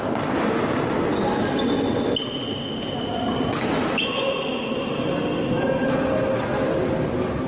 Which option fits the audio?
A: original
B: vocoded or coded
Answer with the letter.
A